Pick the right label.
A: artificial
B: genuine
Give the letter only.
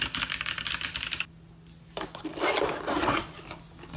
B